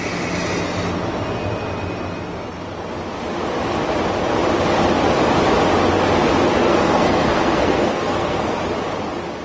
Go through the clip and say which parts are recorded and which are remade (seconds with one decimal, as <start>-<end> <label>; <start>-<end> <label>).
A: 0.0-6.6 recorded; 6.6-8.6 remade; 8.6-9.4 recorded